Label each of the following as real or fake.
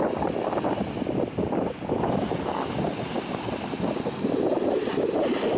real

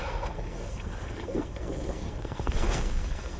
fake